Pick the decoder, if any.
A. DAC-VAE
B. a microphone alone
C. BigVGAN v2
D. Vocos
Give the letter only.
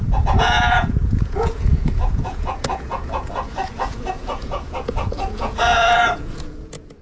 D